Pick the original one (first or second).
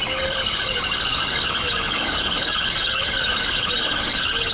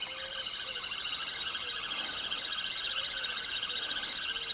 second